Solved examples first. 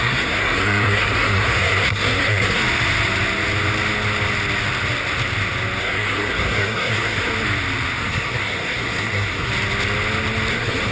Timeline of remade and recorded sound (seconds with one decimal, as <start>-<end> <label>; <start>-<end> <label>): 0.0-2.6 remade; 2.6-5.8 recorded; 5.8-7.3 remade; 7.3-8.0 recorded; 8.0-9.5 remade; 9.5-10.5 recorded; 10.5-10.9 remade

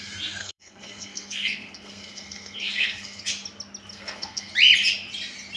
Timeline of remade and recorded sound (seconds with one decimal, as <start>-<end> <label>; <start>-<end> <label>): 0.0-0.4 recorded; 0.4-3.2 remade; 3.2-3.9 recorded; 3.9-4.5 remade; 4.5-5.6 recorded

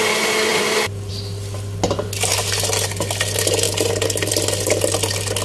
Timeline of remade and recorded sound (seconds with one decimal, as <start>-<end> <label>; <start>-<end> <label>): 0.0-5.4 recorded

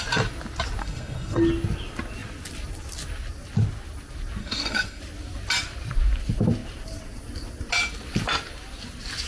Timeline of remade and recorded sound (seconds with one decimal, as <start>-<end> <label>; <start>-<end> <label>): 0.0-0.8 recorded; 0.8-1.4 remade; 1.4-4.4 recorded; 4.4-5.0 remade; 5.0-9.3 recorded

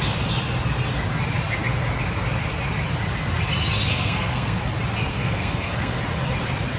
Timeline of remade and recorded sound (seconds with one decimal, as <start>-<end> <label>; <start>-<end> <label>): 0.0-3.9 recorded; 3.9-4.6 remade; 4.6-5.1 recorded; 5.1-6.0 remade; 6.0-6.8 recorded

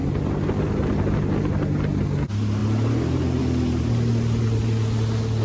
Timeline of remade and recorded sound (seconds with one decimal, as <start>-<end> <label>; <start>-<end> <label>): 0.0-5.4 recorded

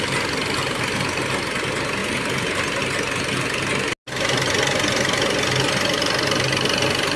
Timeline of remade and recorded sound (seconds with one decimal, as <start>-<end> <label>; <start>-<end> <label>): 0.0-7.2 recorded

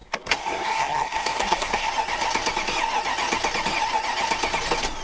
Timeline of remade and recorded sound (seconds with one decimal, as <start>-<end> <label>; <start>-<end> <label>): 0.0-1.9 remade; 1.9-5.0 recorded